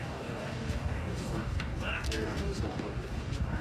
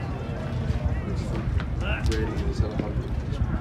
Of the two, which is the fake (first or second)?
first